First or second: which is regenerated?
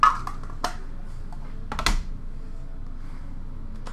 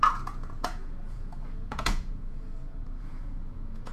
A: second